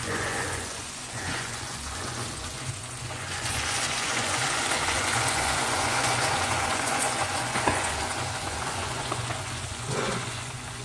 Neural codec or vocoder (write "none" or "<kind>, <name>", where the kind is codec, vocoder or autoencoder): vocoder, Vocos